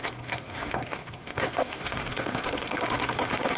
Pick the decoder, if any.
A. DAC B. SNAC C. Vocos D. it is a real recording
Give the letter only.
B